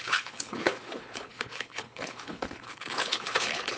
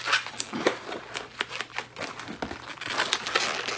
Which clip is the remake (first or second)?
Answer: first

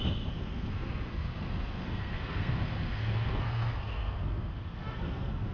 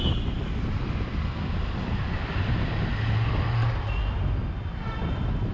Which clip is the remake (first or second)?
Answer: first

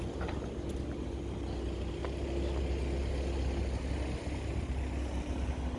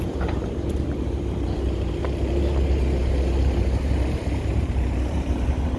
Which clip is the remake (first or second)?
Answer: second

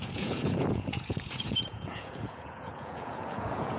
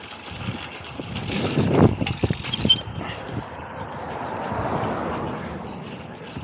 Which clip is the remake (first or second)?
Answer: first